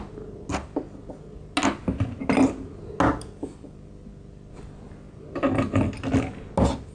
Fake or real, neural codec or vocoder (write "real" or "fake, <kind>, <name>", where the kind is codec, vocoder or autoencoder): real